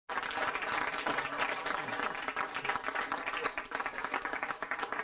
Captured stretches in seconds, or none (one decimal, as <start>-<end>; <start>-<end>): 0.0-3.8